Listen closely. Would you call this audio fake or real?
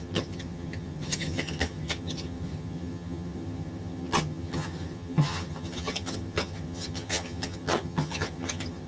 fake